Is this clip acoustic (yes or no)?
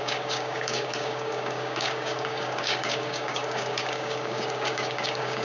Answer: no